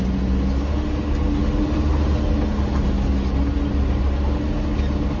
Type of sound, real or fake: real